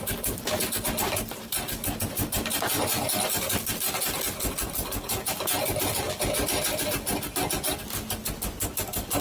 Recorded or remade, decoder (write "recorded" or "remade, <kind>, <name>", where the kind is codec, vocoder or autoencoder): recorded